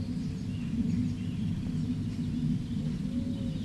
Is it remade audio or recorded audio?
remade